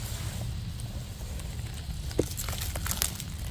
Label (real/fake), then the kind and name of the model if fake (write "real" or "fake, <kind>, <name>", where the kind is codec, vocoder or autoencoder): real